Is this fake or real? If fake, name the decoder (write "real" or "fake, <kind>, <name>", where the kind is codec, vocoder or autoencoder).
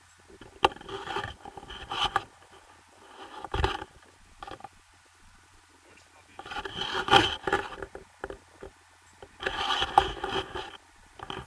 real